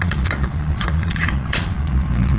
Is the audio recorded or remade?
remade